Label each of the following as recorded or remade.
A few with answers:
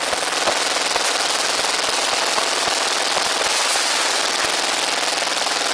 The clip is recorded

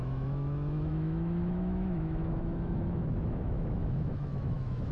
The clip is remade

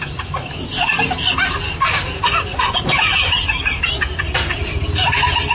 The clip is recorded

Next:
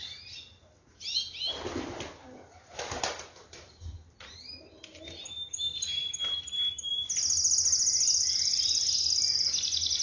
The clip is recorded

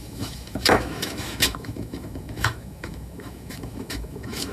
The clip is remade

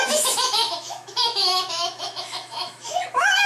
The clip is remade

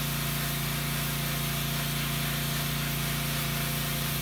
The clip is recorded